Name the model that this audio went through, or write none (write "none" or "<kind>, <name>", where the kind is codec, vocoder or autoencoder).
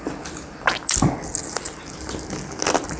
none